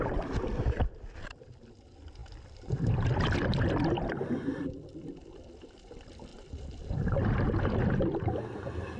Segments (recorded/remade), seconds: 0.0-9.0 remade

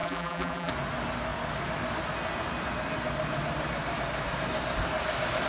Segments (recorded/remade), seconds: 0.0-0.7 remade; 0.7-5.5 recorded

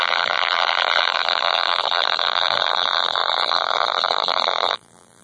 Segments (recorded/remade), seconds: 0.0-5.2 remade

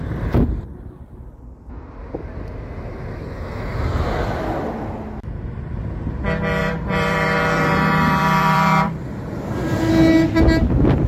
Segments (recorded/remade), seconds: 0.0-6.6 recorded; 6.6-9.9 remade; 9.9-11.1 recorded

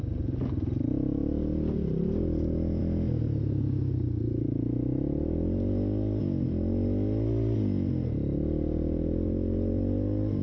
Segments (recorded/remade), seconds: 0.0-10.4 recorded

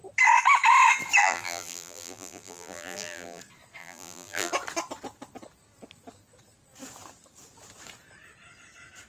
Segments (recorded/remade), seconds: 0.0-1.2 recorded; 1.2-3.4 remade; 3.4-3.8 recorded; 3.8-4.5 remade; 4.5-9.1 recorded

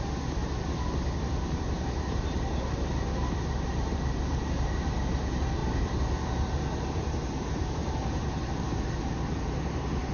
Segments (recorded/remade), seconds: 0.0-0.4 remade; 0.4-1.2 recorded; 1.2-10.1 remade

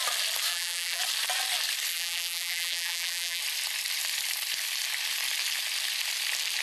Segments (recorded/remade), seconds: 0.0-0.5 recorded; 0.5-1.0 remade; 1.0-1.9 recorded; 1.9-3.4 remade; 3.4-6.6 recorded